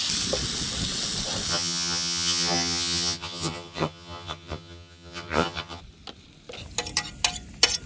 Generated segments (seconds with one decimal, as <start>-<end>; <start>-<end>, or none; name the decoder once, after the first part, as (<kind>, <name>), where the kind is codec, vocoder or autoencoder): 1.5-5.8 (vocoder, HiFi-GAN)